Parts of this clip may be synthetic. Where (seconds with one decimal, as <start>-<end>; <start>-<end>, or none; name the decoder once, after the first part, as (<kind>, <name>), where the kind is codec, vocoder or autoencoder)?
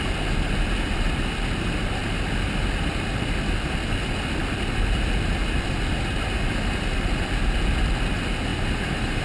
8.5-9.2 (vocoder, BigVGAN v2)